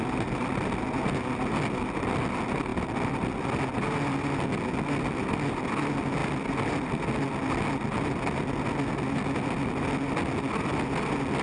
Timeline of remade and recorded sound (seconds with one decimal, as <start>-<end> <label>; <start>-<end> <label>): 0.0-11.4 recorded